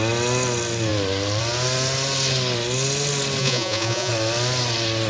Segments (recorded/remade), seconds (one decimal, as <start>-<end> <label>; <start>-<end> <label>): 0.0-3.4 recorded; 3.4-4.1 remade; 4.1-5.1 recorded